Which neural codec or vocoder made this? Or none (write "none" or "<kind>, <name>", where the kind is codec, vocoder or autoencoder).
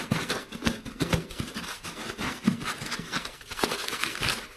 codec, SNAC